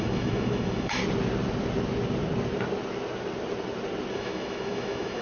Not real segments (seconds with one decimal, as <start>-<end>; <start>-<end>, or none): 0.0-1.0; 4.1-5.2